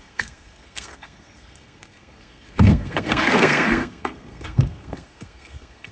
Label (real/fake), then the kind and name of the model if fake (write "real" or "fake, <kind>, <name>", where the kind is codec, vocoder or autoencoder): fake, codec, SNAC